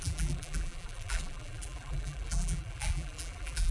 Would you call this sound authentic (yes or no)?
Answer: no